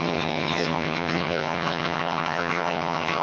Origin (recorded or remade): remade